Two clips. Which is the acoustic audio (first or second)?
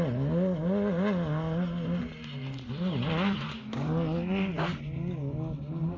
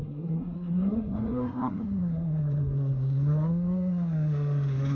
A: first